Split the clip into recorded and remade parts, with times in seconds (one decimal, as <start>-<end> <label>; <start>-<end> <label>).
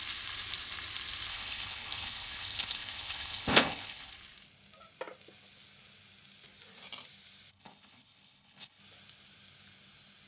0.0-1.3 recorded; 1.3-4.1 remade; 4.1-7.5 recorded; 7.5-8.8 remade; 8.8-10.3 recorded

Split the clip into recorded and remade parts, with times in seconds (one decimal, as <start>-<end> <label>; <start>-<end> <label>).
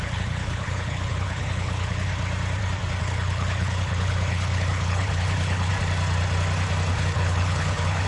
0.0-2.1 remade; 2.1-3.0 recorded; 3.0-5.7 remade; 5.7-6.9 recorded; 6.9-8.1 remade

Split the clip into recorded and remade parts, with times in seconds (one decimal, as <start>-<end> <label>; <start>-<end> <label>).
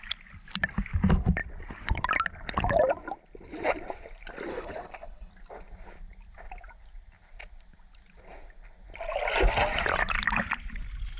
0.0-4.5 recorded; 4.5-5.3 remade; 5.3-11.2 recorded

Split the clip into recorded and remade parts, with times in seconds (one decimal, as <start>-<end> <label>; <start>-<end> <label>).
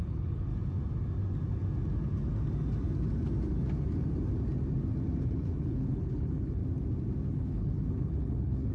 0.0-0.5 remade; 0.5-5.2 recorded; 5.2-6.6 remade; 6.6-7.3 recorded; 7.3-8.7 remade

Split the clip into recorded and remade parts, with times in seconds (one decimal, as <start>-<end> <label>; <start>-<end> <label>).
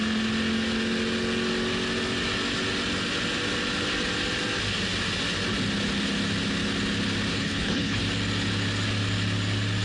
0.0-7.3 recorded; 7.3-8.0 remade; 8.0-9.8 recorded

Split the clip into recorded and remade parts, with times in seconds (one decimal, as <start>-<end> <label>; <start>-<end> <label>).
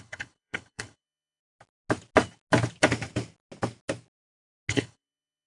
0.0-1.4 remade; 1.4-4.7 recorded; 4.7-5.5 remade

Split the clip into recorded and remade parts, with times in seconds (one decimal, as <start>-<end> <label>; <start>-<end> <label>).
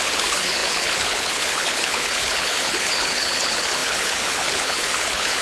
0.0-5.4 remade